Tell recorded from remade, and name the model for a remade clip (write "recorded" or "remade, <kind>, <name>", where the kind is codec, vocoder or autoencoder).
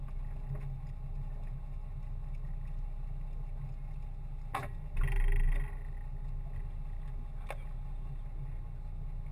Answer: recorded